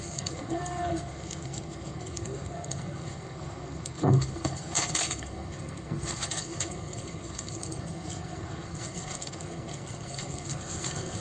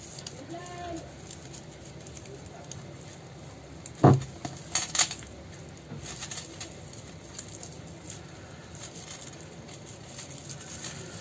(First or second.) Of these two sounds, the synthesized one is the first